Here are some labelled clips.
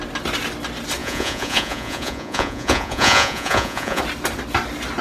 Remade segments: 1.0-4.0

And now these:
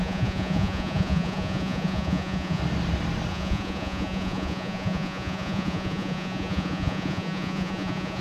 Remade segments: 0.0-2.6; 3.3-8.2

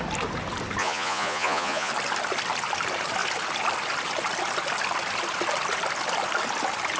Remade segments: 0.8-1.9

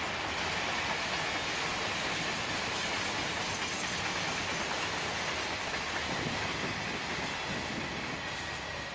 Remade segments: none

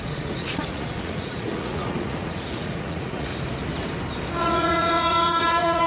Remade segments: 0.0-3.3; 4.4-5.9

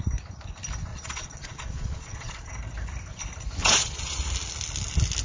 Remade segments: 0.9-2.5; 3.6-4.3

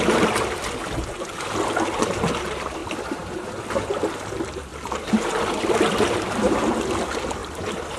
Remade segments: none

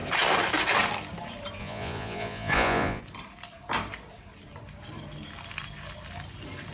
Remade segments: 1.6-3.0